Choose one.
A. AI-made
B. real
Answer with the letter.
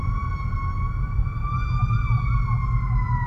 B